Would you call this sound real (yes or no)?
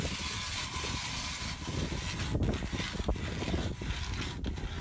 yes